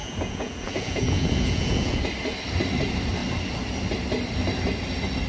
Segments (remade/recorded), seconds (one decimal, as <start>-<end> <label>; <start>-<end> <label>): 0.0-2.0 remade; 2.0-5.3 recorded